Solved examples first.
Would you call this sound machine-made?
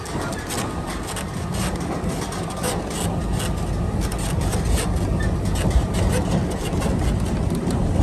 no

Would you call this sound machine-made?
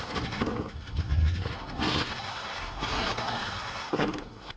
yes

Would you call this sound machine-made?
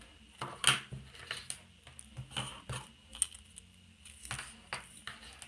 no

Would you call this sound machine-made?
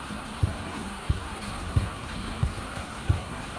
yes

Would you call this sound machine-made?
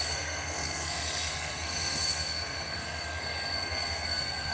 yes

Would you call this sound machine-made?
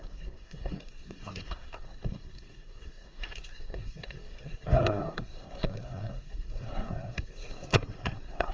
yes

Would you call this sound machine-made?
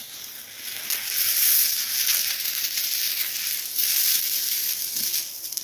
no